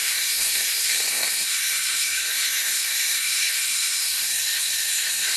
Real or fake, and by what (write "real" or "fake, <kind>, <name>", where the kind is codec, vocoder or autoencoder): fake, codec, SNAC